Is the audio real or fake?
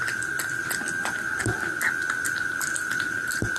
real